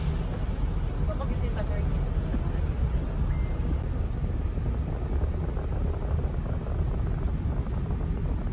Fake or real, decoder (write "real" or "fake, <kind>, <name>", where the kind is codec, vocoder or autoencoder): real